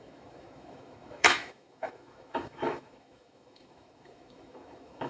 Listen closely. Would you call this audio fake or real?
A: fake